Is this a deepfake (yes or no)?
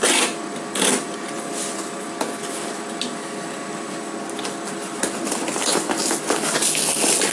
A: no